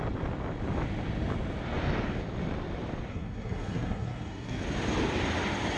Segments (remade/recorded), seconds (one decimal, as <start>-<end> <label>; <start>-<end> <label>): 0.0-3.1 recorded; 3.1-4.6 remade; 4.6-5.8 recorded